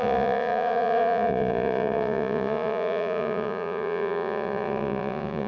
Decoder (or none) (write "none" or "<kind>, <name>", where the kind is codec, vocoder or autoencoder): vocoder, Vocos